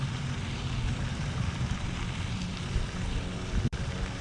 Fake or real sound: fake